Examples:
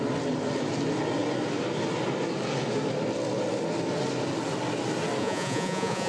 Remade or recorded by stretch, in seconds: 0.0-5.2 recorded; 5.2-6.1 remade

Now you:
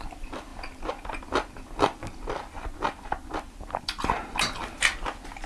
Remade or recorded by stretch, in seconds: 0.0-5.5 recorded

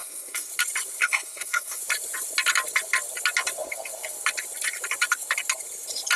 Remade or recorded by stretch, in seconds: 0.0-0.5 remade; 0.5-1.0 recorded; 1.0-1.8 remade; 1.8-6.2 recorded

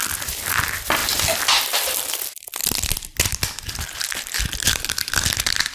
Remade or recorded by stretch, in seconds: 0.0-5.7 recorded

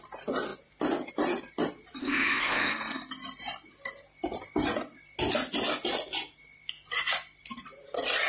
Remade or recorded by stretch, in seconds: 0.0-2.0 recorded; 2.0-2.7 remade; 2.7-8.3 recorded

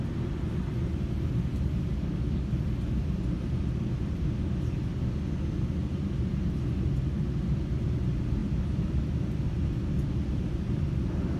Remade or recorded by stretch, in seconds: 0.0-1.9 recorded; 1.9-2.5 remade; 2.5-11.4 recorded

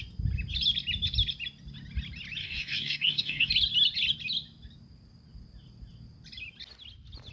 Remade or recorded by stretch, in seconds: 0.0-2.4 recorded; 2.4-3.5 remade; 3.5-7.3 recorded